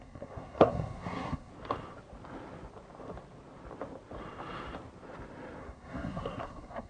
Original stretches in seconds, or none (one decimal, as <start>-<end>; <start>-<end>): 1.5-5.6